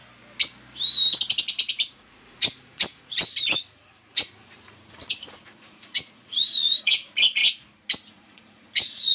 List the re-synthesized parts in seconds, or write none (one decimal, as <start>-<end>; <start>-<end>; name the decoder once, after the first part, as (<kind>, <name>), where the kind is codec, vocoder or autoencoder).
1.9-7.4 (vocoder, Vocos); 8.1-9.1